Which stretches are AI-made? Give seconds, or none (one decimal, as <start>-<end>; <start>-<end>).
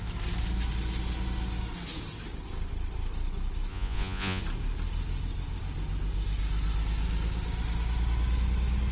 3.7-4.4